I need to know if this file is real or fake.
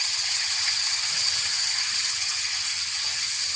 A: fake